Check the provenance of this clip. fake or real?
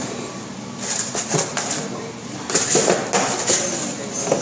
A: real